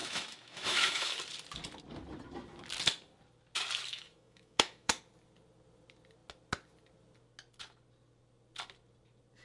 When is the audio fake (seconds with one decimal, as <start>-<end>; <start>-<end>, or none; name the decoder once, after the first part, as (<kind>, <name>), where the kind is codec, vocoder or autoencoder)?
0.0-1.2 (autoencoder, DAC-VAE); 3.9-5.0